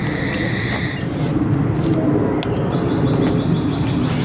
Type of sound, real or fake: real